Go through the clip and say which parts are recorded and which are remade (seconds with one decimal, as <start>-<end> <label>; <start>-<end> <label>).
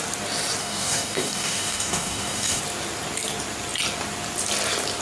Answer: 0.0-0.6 recorded; 0.6-2.6 remade; 2.6-5.0 recorded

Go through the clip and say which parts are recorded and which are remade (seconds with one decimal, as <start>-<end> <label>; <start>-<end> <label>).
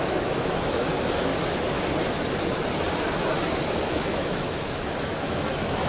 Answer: 0.0-1.3 remade; 1.3-3.9 recorded; 3.9-5.9 remade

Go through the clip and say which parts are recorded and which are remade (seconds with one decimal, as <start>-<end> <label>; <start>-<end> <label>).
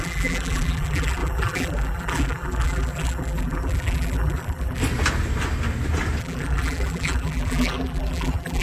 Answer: 0.0-4.8 remade; 4.8-6.2 recorded; 6.2-8.6 remade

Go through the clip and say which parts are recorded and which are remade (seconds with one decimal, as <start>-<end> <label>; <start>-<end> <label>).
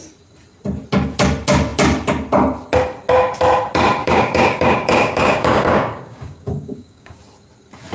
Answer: 0.0-4.0 recorded; 4.0-7.2 remade; 7.2-7.9 recorded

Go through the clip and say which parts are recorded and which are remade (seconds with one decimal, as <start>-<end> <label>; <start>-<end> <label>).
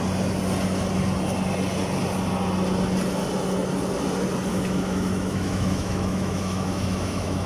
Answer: 0.0-4.5 recorded; 4.5-7.5 remade